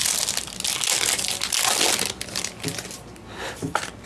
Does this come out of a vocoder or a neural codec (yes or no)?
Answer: no